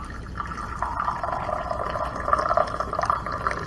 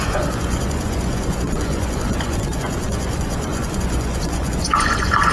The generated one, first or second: second